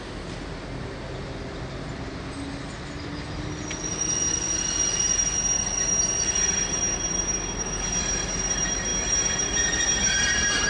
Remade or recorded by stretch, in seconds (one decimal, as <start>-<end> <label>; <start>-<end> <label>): 0.0-10.7 recorded